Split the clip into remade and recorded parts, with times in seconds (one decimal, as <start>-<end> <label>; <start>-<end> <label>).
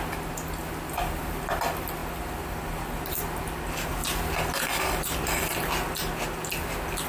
0.0-7.1 recorded